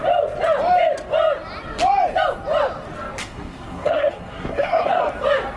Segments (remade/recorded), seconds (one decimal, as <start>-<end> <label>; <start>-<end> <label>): 0.0-3.2 recorded; 3.2-5.0 remade; 5.0-5.6 recorded